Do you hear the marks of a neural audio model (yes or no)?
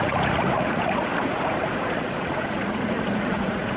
yes